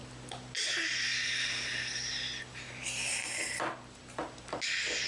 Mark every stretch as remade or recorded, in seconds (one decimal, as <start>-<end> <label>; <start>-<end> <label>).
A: 0.0-5.1 recorded